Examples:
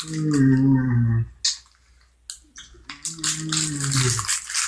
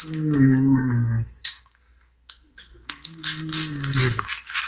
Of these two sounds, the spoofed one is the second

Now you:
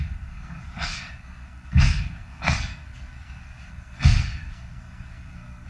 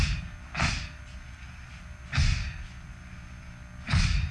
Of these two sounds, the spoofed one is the first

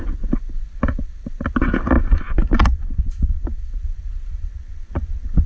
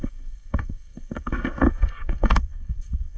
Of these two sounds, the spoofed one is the second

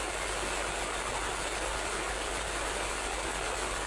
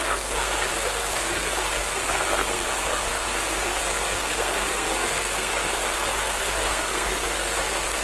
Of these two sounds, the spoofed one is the second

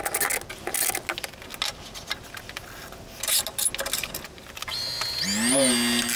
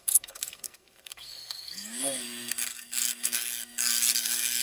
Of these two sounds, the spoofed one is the second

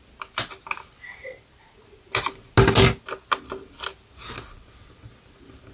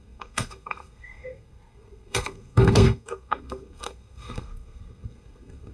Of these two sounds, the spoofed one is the second